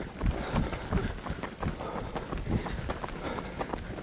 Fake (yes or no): no